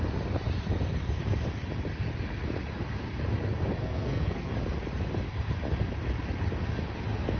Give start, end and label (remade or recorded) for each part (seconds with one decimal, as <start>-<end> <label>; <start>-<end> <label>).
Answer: 0.0-3.8 recorded; 3.8-4.5 remade; 4.5-7.4 recorded